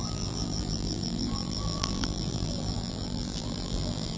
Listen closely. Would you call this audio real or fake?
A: fake